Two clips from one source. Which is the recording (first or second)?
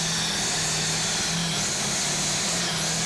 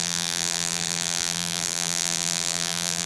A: first